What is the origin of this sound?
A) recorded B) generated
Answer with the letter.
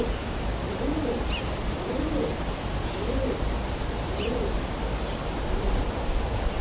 B